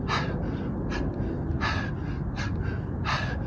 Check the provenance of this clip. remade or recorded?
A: recorded